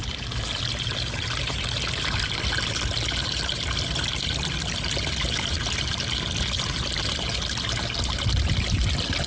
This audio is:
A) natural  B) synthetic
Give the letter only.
A